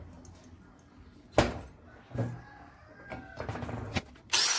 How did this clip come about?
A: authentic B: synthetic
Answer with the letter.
A